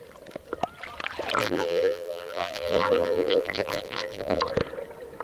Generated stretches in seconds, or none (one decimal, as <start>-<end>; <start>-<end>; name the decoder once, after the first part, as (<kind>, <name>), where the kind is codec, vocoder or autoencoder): 1.4-4.4 (vocoder, BigVGAN v2)